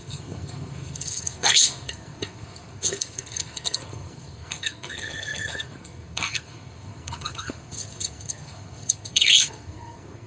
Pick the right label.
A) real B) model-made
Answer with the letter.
B